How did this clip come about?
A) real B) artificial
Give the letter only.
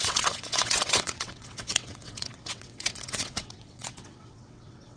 B